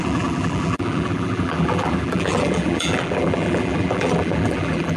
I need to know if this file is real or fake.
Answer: fake